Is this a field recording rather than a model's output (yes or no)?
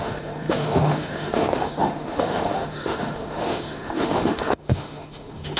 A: no